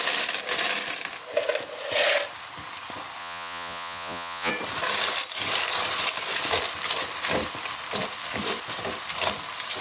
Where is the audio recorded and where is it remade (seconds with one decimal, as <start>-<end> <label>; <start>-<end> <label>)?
0.0-3.2 recorded; 3.2-4.5 remade; 4.5-9.8 recorded